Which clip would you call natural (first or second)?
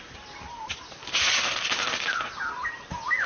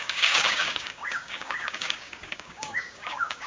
first